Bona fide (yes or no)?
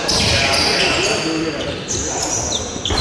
yes